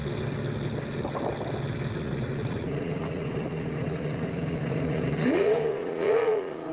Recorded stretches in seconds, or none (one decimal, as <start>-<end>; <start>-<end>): 0.0-1.9